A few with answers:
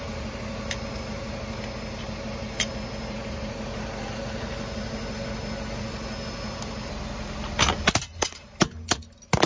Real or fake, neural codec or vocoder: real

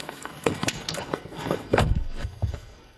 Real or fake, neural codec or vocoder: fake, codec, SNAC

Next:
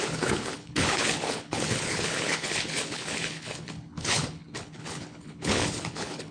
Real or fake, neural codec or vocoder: fake, codec, HILCodec